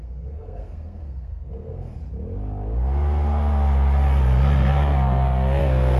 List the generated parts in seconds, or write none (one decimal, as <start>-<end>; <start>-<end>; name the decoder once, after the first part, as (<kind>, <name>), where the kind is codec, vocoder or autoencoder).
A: 0.0-2.0 (codec, SNAC); 5.6-6.0